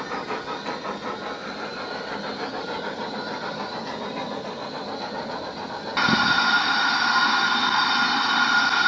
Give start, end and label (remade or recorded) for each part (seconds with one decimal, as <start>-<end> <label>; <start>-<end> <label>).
0.0-8.9 recorded